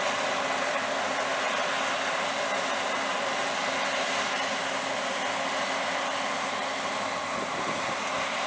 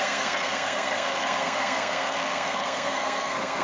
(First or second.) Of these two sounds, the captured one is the first